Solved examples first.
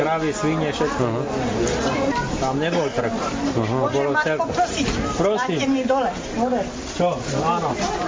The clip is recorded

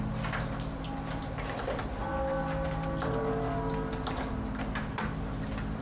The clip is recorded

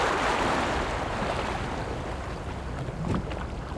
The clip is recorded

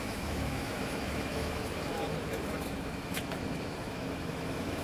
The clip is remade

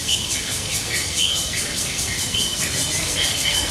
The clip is remade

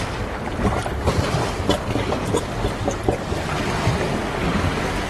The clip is recorded